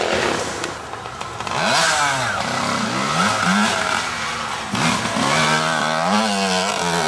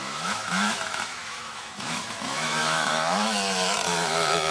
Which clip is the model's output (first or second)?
second